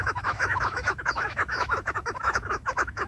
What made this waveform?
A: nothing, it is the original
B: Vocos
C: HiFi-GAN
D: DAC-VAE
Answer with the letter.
D